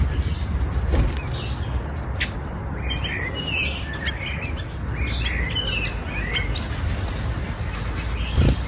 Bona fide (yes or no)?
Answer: yes